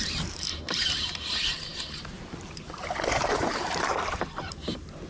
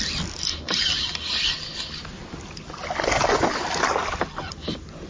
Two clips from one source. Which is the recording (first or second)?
second